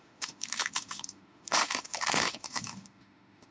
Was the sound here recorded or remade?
remade